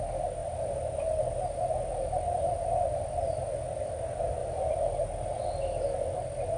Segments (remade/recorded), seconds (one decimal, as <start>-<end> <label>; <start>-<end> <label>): 0.0-6.6 recorded